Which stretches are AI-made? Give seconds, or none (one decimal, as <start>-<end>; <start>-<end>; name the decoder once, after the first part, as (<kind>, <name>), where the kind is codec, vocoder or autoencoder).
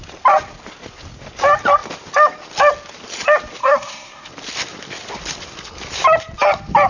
3.6-4.3 (codec, SNAC)